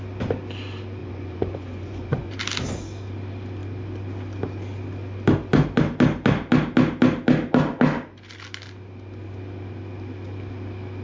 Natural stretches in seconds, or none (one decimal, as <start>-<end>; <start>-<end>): 0.0-1.0; 2.3-11.0